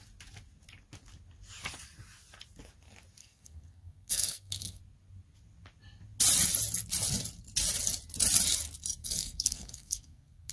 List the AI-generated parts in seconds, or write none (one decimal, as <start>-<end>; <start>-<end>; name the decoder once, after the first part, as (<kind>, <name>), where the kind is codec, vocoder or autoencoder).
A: 3.2-4.8 (codec, SNAC); 9.0-10.5